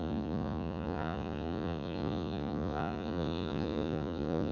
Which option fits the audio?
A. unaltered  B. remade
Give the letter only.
B